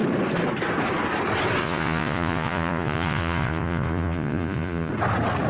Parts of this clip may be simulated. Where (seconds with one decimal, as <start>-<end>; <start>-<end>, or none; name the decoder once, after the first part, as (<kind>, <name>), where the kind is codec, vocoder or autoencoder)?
1.6-4.9 (vocoder, Vocos)